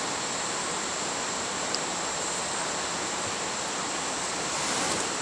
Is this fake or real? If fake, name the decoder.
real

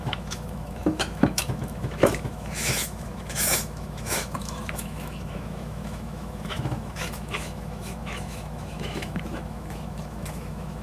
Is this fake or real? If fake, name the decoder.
fake, autoencoder, DAC-VAE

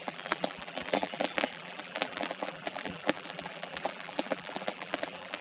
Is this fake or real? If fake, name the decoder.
fake, vocoder, BigVGAN v2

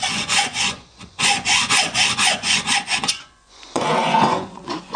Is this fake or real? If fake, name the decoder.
fake, vocoder, Vocos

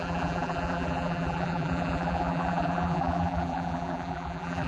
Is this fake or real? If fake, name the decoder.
fake, vocoder, BigVGAN v2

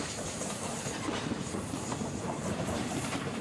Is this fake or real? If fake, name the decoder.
fake, vocoder, BigVGAN v2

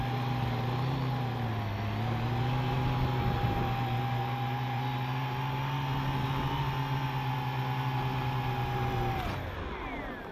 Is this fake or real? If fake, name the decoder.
real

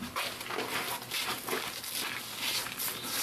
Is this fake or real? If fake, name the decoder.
real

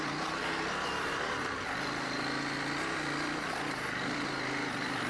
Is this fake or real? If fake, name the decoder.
real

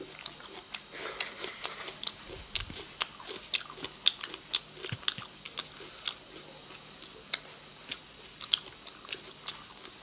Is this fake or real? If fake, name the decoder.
real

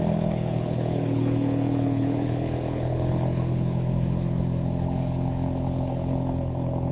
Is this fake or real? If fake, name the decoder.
fake, codec, HILCodec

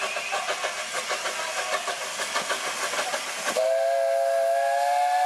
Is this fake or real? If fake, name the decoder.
real